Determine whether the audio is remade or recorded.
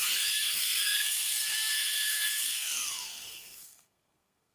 remade